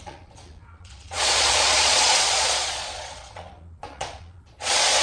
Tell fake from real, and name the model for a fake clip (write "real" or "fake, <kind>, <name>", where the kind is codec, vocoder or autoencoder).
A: fake, vocoder, Vocos